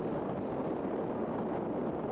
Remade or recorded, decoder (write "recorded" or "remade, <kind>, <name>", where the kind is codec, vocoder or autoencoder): recorded